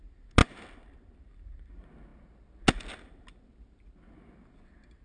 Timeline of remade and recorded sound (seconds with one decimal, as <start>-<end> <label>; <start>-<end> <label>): 0.0-5.0 recorded